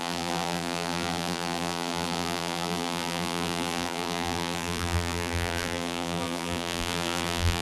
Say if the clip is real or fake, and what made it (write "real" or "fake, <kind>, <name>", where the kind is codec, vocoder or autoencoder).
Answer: fake, vocoder, BigVGAN v2